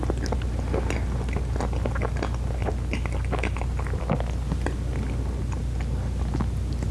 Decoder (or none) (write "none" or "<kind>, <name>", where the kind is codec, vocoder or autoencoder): none